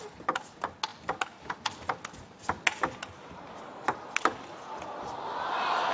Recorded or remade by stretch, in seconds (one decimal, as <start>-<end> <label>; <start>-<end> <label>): 0.0-5.9 recorded